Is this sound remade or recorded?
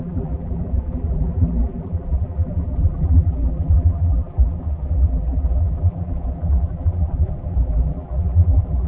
remade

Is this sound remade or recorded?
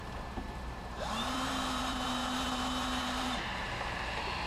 remade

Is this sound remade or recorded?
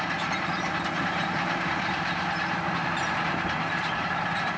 remade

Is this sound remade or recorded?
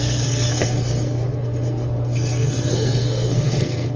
remade